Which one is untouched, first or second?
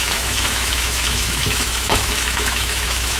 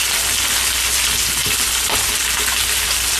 second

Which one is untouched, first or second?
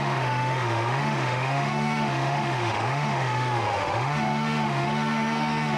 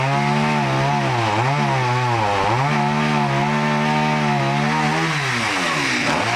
second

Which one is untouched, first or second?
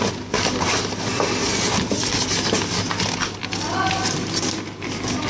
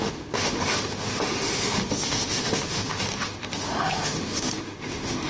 first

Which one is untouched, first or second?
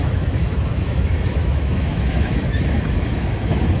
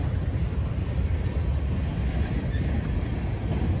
second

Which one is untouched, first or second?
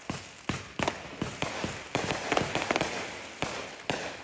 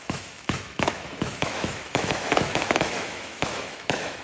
first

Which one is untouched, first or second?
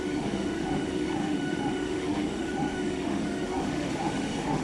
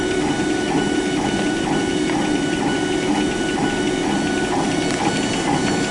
second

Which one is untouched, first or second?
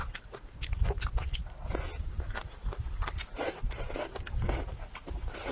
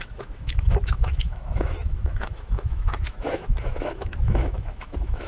first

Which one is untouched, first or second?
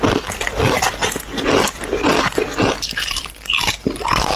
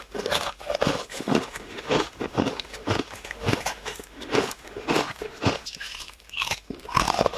first